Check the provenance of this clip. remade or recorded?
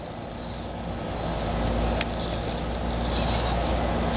recorded